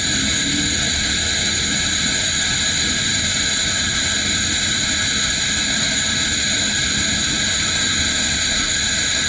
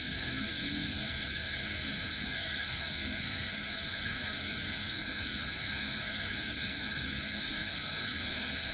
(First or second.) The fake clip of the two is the second